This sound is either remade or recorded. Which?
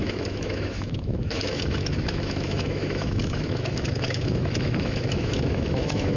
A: remade